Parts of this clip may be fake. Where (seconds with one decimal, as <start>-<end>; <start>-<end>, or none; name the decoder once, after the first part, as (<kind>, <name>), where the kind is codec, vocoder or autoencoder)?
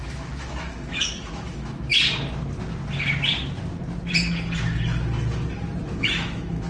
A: 0.0-1.9 (autoencoder, DAC-VAE); 5.9-6.7